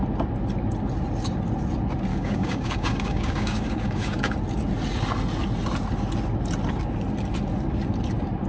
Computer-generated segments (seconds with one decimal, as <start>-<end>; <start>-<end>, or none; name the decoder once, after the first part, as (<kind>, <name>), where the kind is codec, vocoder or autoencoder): 2.1-4.3 (codec, DAC)